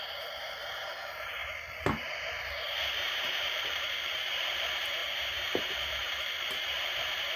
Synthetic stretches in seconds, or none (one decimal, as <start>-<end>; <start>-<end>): 0.0-5.0; 5.6-7.4